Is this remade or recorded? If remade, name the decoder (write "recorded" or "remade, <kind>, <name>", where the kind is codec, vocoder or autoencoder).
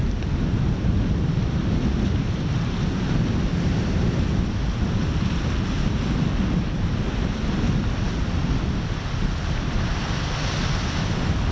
recorded